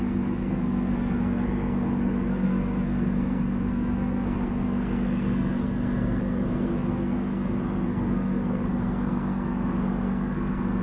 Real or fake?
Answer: fake